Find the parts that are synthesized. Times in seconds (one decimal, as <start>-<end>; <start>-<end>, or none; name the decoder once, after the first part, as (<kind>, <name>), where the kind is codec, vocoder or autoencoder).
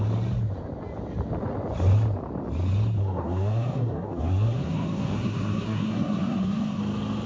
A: 3.0-6.8 (codec, SNAC)